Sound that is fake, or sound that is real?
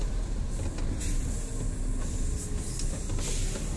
real